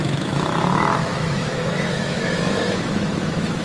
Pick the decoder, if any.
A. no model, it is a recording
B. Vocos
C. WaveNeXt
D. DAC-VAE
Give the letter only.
D